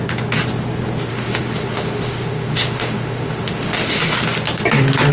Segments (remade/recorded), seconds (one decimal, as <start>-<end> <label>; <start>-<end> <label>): 0.0-1.1 recorded; 1.1-4.2 remade; 4.2-5.1 recorded